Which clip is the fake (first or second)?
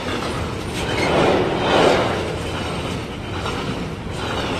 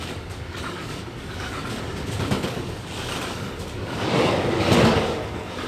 second